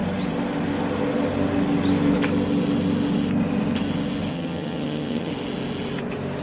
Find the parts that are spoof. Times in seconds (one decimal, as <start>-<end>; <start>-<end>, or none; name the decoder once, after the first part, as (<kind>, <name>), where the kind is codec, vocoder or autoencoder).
4.3-5.3 (vocoder, HiFi-GAN)